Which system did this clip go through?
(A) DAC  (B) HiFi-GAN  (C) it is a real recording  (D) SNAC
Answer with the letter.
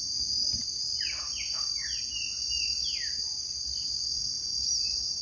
C